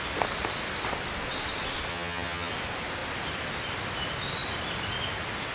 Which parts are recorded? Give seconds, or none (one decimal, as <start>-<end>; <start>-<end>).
0.0-1.9; 2.5-5.5